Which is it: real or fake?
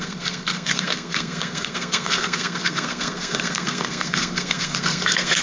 fake